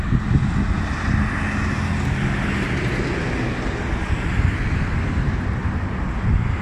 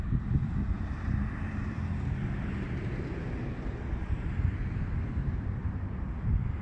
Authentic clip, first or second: first